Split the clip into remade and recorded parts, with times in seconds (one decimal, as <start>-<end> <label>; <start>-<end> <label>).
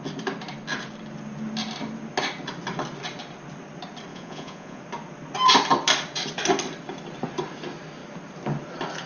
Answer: 0.0-4.1 recorded; 4.1-4.8 remade; 4.8-9.1 recorded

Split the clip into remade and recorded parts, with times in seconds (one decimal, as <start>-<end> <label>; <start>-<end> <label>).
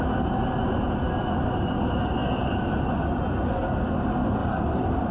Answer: 0.0-5.1 recorded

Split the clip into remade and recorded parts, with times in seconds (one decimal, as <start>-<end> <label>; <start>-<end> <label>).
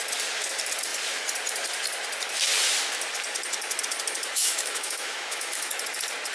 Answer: 0.0-4.4 recorded; 4.4-5.7 remade; 5.7-6.3 recorded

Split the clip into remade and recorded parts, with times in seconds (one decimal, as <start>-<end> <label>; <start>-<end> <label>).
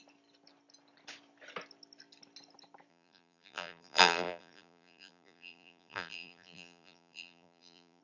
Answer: 0.0-2.9 recorded; 2.9-8.0 remade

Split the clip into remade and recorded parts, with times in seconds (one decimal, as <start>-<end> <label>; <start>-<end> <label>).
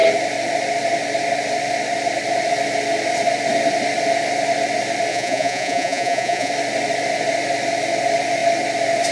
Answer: 0.0-5.1 recorded; 5.1-6.5 remade; 6.5-9.1 recorded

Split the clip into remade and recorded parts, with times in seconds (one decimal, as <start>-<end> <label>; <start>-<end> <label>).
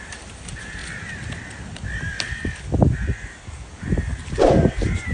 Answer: 0.0-0.8 remade; 0.8-3.8 recorded; 3.8-5.1 remade